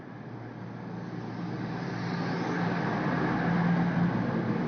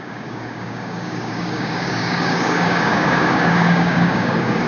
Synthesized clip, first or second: second